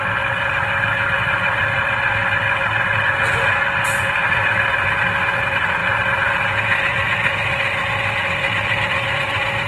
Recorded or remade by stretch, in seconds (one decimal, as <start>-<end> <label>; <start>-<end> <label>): 0.0-9.7 recorded

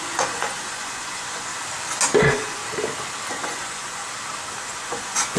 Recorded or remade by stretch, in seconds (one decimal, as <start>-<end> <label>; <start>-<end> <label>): 0.0-1.5 remade; 1.5-2.2 recorded; 2.2-2.6 remade; 2.6-3.3 recorded; 3.3-4.0 remade; 4.0-4.6 recorded; 4.6-5.4 remade